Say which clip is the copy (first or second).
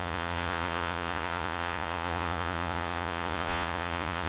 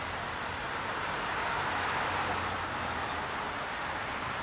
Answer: first